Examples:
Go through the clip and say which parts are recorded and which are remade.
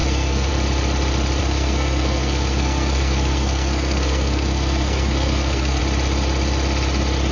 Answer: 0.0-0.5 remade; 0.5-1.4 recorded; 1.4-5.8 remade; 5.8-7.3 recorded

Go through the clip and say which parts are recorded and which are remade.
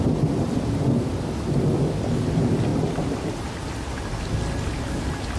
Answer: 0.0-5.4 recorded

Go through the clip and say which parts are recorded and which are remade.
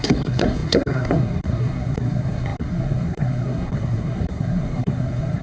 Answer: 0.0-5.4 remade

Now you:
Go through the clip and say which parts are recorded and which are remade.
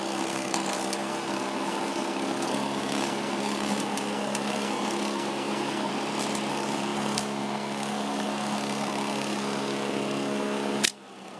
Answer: 0.0-5.9 remade; 5.9-6.5 recorded; 6.5-11.4 remade